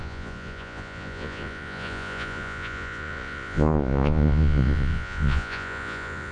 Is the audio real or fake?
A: fake